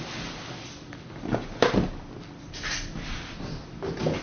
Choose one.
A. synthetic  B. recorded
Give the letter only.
B